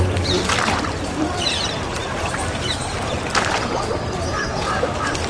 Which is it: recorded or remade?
remade